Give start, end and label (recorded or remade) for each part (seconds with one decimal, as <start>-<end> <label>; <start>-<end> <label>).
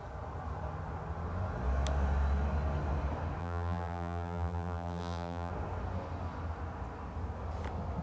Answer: 0.0-3.4 recorded; 3.4-5.5 remade; 5.5-8.0 recorded